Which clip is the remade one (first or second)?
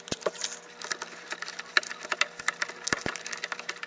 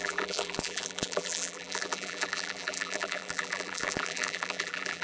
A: second